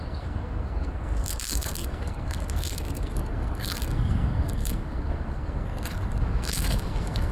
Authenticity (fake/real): fake